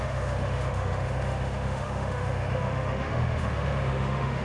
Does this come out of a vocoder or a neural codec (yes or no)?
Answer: yes